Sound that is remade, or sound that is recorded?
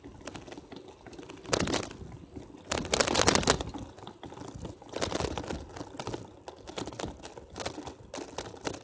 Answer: recorded